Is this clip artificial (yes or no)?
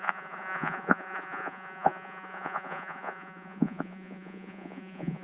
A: yes